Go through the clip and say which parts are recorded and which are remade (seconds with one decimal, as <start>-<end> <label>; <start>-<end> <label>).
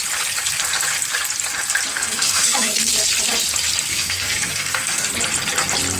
0.0-1.9 recorded; 1.9-2.9 remade; 2.9-3.9 recorded; 3.9-5.1 remade; 5.1-6.0 recorded